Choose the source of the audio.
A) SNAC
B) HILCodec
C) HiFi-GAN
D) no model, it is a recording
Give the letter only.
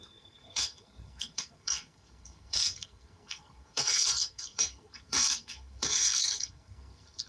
A